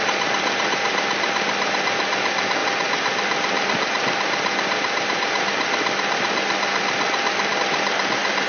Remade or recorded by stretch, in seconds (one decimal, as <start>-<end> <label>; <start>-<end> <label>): 0.0-8.5 recorded